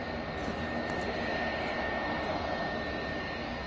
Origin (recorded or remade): recorded